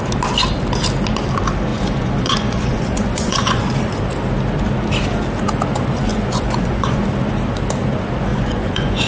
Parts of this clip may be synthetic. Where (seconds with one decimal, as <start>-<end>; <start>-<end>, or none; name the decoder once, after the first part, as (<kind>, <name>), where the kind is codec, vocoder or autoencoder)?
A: 1.7-3.6 (vocoder, Vocos); 6.1-7.0; 8.3-9.1